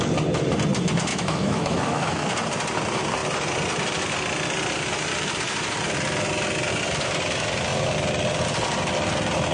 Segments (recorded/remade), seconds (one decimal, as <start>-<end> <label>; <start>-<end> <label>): 0.0-1.1 recorded; 1.1-2.3 remade; 2.3-9.5 recorded